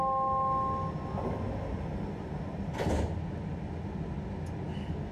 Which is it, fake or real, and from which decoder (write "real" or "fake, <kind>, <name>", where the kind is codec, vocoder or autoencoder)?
real